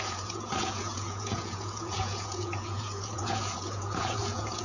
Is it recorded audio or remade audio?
remade